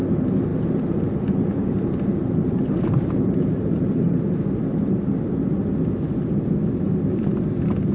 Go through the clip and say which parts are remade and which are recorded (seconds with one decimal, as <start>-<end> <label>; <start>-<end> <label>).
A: 0.0-0.5 recorded; 0.5-4.2 remade; 4.2-7.9 recorded